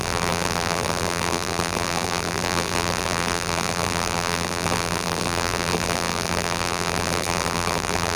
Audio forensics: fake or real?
fake